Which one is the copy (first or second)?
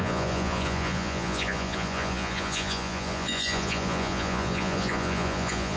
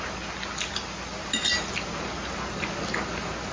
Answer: first